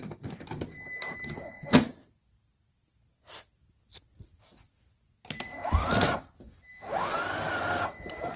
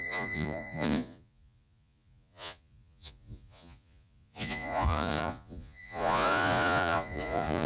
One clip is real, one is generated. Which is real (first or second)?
first